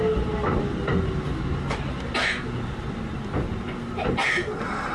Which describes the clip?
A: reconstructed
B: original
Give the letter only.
B